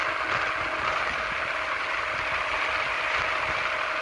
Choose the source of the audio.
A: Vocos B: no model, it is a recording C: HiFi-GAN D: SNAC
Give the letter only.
B